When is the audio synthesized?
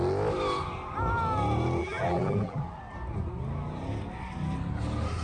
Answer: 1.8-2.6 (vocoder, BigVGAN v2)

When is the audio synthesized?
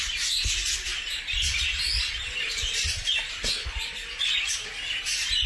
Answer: 0.9-4.2 (vocoder, BigVGAN v2)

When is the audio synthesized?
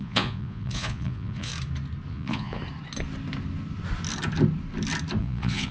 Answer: 0.0-1.5 (vocoder, Vocos); 2.1-2.6; 5.2-5.7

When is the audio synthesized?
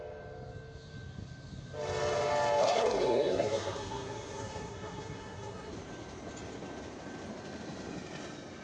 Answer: 2.6-5.7 (codec, SNAC)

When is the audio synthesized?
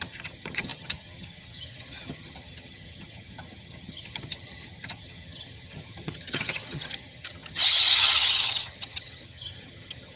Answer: 0.0-10.2 (vocoder, HiFi-GAN)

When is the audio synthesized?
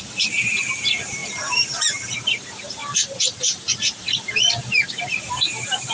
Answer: 0.0-2.8 (vocoder, BigVGAN v2); 4.9-5.9